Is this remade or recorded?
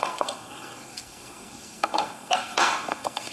remade